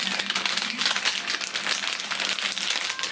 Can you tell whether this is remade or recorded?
recorded